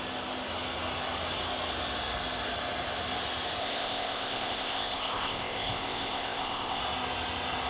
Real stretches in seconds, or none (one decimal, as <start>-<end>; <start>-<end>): 0.0-3.6; 6.8-7.7